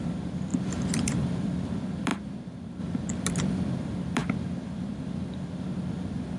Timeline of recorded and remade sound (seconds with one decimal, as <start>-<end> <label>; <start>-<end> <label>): 0.0-4.2 remade; 4.2-5.6 recorded; 5.6-6.4 remade